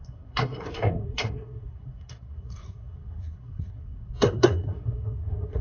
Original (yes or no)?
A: no